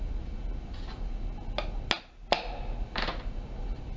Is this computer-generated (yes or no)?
no